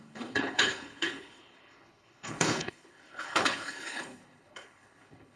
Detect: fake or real fake